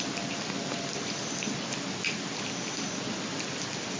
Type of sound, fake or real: real